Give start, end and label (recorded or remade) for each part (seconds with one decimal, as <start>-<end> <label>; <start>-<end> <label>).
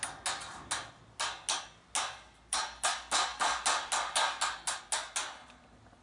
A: 0.0-6.0 recorded